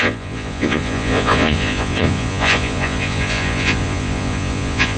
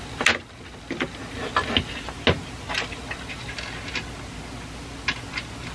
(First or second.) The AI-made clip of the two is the first